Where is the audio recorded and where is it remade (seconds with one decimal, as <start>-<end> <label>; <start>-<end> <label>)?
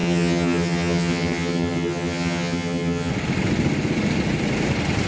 0.0-3.1 remade; 3.1-5.1 recorded